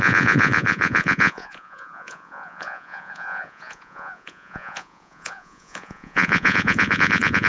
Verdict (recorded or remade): remade